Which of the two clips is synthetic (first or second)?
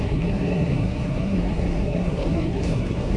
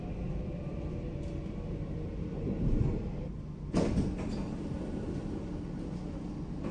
first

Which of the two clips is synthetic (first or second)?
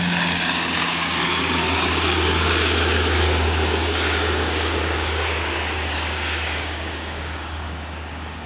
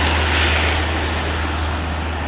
first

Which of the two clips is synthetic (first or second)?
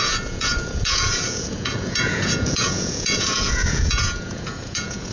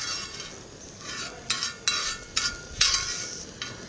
first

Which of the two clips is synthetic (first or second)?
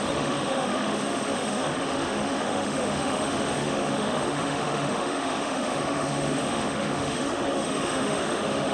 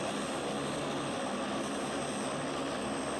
first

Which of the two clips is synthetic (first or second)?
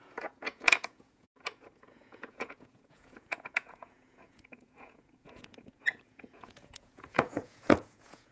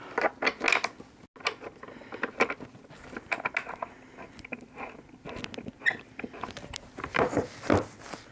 first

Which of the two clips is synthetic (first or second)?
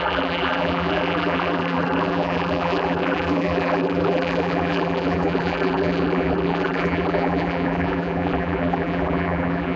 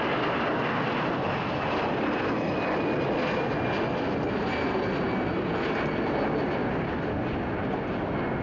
first